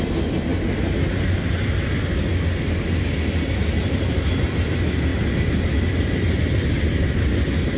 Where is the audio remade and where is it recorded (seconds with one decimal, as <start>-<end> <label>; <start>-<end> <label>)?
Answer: 0.0-7.8 recorded